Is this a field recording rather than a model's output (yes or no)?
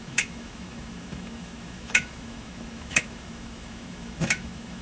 no